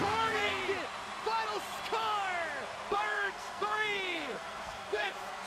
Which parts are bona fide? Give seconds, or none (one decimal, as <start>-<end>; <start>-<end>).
0.6-2.9